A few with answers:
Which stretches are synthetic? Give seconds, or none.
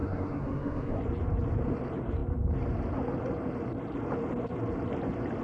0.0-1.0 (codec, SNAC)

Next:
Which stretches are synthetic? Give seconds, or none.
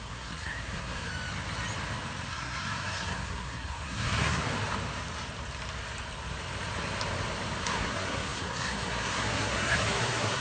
0.0-1.1 (codec, SNAC); 2.3-4.5; 7.6-10.4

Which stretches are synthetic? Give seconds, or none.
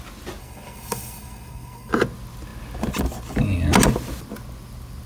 0.4-1.9 (codec, SNAC)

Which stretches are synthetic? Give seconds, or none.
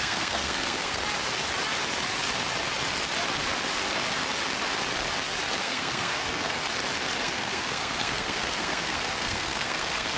0.0-1.0 (codec, SNAC); 5.6-6.6; 7.2-10.2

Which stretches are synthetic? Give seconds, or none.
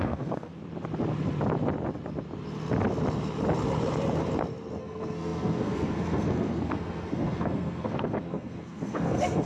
0.0-0.5 (codec, SNAC); 4.8-9.5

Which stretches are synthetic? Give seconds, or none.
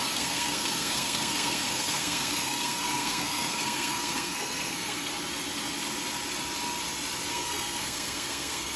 0.0-5.1 (codec, SNAC); 7.3-8.8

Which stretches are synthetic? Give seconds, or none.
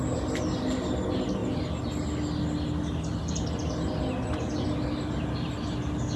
none